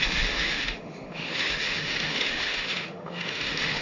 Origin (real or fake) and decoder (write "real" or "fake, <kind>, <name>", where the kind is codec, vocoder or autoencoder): fake, autoencoder, DAC-VAE